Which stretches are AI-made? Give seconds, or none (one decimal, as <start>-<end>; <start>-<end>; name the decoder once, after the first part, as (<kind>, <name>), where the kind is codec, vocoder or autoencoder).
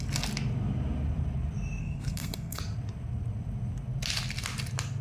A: 1.8-2.6 (codec, SNAC)